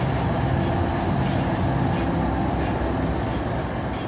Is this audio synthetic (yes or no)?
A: no